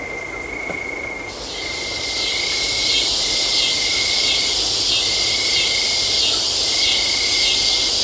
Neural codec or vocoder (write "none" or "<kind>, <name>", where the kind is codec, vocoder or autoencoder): none